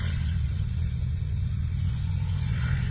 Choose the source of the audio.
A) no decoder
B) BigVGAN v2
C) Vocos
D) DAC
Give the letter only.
C